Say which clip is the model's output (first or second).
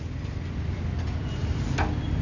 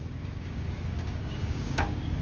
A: second